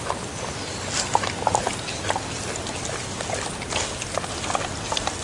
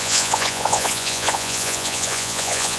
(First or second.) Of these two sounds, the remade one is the second